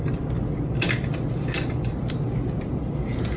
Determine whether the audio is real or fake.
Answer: real